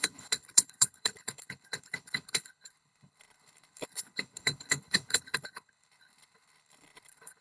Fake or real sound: fake